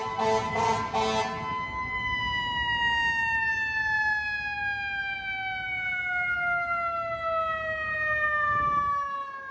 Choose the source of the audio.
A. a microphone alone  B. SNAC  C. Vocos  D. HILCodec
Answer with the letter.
A